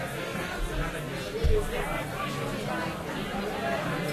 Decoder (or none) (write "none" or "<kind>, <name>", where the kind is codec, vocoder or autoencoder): none